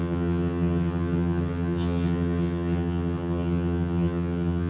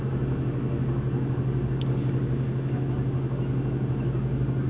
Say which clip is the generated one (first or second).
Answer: first